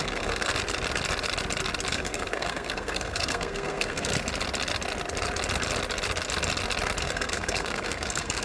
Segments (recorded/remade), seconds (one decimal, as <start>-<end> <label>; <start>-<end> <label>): 0.0-0.5 remade; 0.5-1.9 recorded; 1.9-4.1 remade; 4.1-7.0 recorded; 7.0-8.4 remade